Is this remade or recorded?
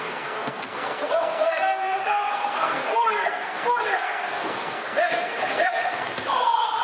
remade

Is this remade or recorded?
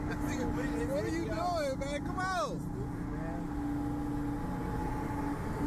recorded